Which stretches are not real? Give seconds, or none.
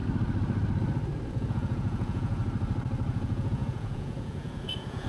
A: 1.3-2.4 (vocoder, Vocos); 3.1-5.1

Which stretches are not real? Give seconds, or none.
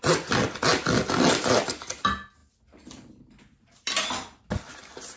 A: none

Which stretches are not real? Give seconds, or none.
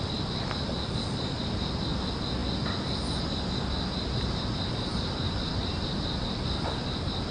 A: none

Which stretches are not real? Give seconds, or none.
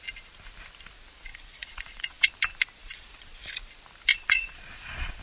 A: 1.3-2.3 (vocoder, Vocos); 2.8-3.3; 4.1-5.2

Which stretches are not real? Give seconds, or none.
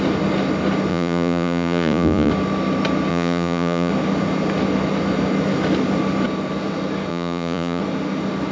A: 0.9-2.3 (vocoder, Vocos); 3.1-3.9; 7.1-7.8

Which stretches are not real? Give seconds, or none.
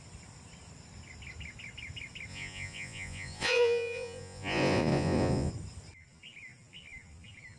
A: 2.3-5.5 (vocoder, Vocos)